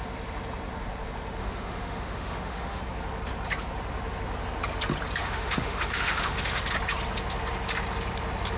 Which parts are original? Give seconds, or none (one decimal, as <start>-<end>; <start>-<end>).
0.0-1.4; 2.8-5.2; 6.6-8.6